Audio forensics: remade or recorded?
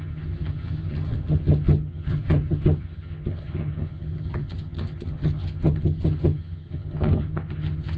remade